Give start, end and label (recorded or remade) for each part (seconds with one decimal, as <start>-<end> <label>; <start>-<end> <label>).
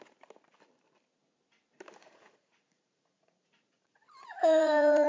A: 0.0-2.0 recorded; 2.0-5.1 remade